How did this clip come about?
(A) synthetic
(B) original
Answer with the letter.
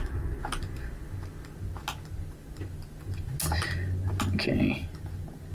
B